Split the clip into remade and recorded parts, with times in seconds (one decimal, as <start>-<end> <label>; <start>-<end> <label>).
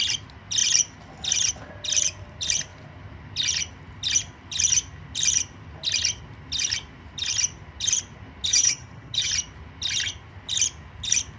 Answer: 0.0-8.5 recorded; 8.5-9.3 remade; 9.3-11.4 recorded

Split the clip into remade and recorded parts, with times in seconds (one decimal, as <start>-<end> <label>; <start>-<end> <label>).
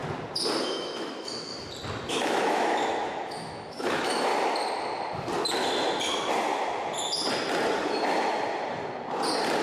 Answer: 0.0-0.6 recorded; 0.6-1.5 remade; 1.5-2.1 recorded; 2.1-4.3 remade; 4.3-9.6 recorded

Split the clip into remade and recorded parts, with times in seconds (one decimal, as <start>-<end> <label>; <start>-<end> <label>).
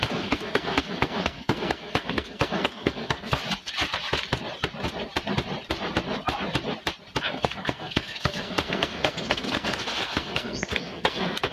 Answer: 0.0-3.4 remade; 3.4-7.2 recorded; 7.2-11.5 remade